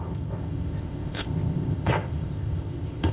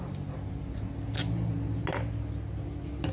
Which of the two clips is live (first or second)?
second